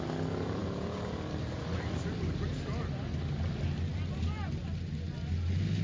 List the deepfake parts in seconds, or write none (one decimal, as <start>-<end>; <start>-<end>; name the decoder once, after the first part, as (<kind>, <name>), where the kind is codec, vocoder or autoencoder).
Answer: none